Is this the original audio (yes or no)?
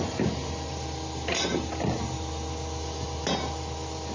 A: yes